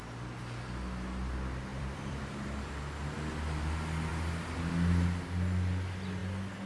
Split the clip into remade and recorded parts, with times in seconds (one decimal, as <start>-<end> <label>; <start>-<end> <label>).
0.0-1.7 recorded; 1.7-2.7 remade; 2.7-4.1 recorded; 4.1-4.7 remade; 4.7-6.7 recorded